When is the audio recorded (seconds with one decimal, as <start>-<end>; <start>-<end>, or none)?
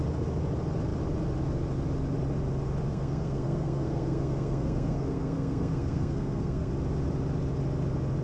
0.0-2.9; 6.7-8.2